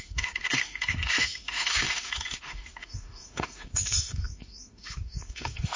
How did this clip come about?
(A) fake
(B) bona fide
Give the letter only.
A